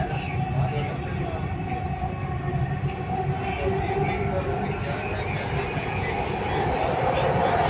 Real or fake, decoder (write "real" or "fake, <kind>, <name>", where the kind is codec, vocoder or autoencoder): real